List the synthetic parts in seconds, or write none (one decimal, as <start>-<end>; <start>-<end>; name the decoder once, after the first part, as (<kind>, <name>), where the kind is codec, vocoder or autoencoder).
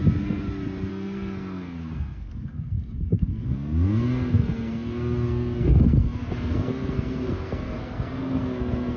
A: 0.9-9.0 (codec, SNAC)